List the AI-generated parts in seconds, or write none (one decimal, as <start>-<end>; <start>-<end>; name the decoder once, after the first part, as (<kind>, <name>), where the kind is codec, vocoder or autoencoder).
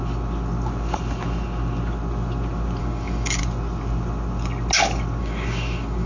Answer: 2.8-3.4 (codec, DAC); 5.2-6.1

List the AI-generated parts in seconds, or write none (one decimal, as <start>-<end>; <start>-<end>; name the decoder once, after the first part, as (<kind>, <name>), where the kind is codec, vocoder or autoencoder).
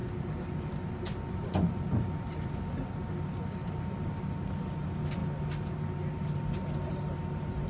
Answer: none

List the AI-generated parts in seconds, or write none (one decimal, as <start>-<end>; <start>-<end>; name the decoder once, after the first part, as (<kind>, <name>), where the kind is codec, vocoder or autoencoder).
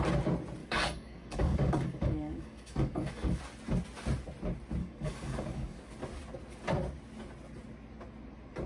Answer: 0.6-3.4 (codec, DAC); 4.8-5.9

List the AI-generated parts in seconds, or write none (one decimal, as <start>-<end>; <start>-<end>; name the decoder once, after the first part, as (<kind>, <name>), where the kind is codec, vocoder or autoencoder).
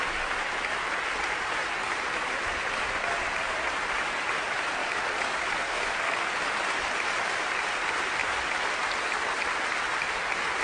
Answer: 4.8-6.2 (codec, DAC)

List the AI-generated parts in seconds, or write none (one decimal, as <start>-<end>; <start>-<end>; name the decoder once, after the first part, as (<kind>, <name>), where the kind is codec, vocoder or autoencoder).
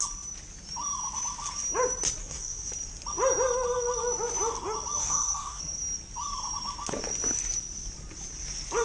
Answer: 2.2-2.7 (codec, DAC); 5.0-5.6